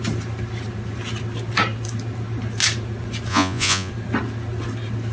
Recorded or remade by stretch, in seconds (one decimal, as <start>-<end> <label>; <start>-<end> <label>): 0.0-3.3 recorded; 3.3-3.9 remade; 3.9-5.1 recorded